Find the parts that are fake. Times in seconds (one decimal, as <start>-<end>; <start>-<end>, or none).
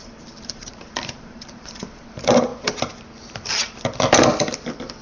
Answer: 0.0-2.5